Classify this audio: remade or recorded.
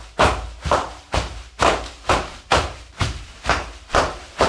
remade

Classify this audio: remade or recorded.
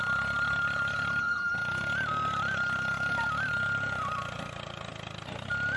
recorded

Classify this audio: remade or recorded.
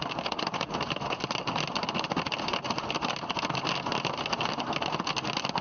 recorded